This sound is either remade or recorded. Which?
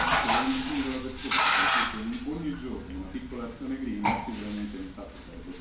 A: recorded